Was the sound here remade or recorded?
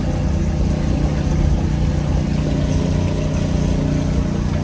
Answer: recorded